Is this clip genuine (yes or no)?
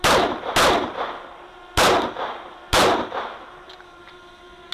yes